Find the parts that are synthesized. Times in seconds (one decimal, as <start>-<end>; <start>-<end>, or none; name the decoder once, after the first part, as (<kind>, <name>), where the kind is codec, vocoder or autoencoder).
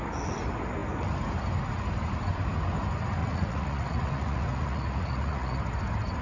3.2-5.6 (vocoder, Vocos)